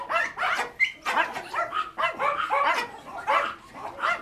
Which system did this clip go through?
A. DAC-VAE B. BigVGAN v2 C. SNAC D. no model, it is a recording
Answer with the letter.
D